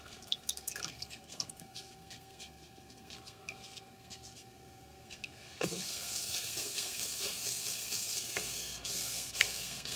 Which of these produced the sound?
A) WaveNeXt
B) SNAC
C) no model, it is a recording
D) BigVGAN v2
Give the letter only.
B